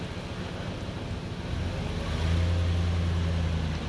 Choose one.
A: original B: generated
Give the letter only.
A